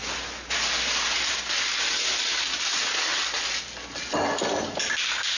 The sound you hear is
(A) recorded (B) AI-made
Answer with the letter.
A